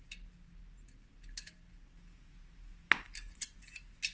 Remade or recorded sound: recorded